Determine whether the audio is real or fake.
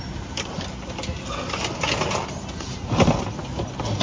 real